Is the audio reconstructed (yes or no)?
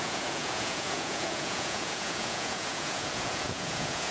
yes